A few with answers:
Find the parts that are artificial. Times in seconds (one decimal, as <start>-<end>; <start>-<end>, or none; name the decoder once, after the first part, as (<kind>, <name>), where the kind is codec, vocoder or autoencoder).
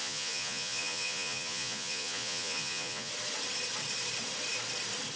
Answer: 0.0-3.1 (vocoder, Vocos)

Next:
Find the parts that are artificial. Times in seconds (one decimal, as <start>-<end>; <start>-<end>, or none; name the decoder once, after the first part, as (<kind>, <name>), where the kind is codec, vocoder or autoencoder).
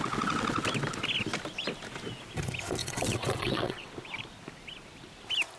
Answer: 2.8-3.9 (vocoder, WaveNeXt)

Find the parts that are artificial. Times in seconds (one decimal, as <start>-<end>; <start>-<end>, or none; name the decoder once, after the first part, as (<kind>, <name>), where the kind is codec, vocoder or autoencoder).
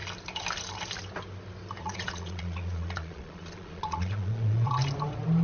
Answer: 1.8-4.7 (vocoder, Vocos)